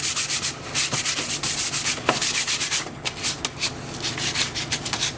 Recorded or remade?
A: recorded